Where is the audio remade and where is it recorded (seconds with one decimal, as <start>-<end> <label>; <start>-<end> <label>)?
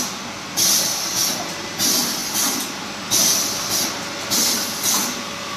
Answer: 0.0-5.6 recorded